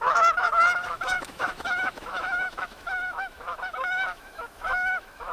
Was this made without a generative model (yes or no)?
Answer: no